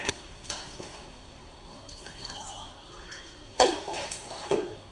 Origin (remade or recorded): remade